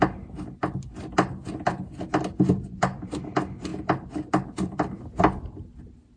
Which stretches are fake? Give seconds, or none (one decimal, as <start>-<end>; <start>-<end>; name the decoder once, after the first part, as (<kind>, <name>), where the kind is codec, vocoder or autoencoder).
none